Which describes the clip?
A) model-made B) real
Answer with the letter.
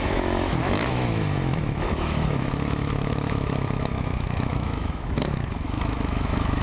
A